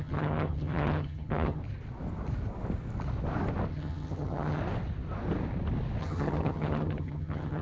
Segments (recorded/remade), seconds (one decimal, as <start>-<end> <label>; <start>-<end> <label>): 0.0-1.6 remade; 1.6-3.7 recorded; 3.7-4.6 remade; 4.6-6.0 recorded; 6.0-7.6 remade